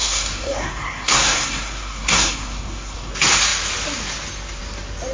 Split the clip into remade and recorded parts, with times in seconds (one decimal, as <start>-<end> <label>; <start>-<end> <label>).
0.0-3.1 remade; 3.1-5.1 recorded